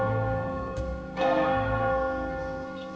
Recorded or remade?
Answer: remade